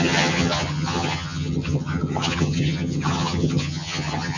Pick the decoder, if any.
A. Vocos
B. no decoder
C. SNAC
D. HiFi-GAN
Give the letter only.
D